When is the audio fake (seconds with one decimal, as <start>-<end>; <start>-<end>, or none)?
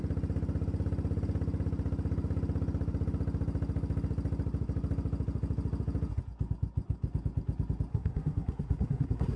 7.9-9.4